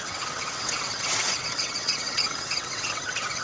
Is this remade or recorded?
remade